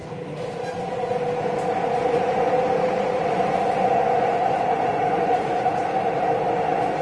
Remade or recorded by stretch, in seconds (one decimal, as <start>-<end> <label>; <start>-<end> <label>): 0.0-3.5 recorded; 3.5-5.5 remade; 5.5-6.5 recorded; 6.5-7.0 remade